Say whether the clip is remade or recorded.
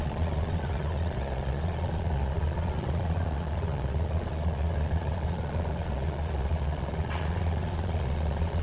remade